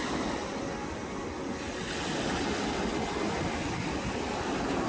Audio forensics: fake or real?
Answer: real